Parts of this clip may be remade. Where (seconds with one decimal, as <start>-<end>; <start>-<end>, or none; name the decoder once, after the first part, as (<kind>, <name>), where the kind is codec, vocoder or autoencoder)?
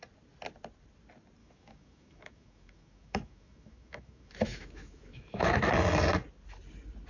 1.4-5.7 (autoencoder, DAC-VAE)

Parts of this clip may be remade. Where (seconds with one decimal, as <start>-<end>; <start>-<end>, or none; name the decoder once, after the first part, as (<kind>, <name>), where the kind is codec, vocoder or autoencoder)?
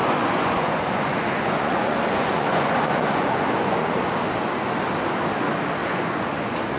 0.0-4.1 (vocoder, Vocos); 5.8-6.8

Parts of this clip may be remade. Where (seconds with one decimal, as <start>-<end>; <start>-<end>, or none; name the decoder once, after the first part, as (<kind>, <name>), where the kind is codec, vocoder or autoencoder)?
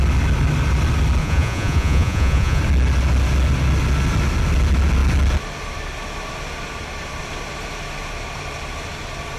1.2-2.6 (vocoder, Vocos)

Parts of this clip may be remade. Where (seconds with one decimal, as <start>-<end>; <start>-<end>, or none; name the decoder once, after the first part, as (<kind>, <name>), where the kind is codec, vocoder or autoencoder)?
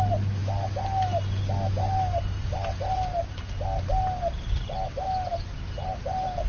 none